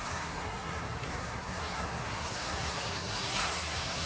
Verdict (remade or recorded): remade